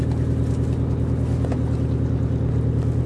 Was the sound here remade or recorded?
recorded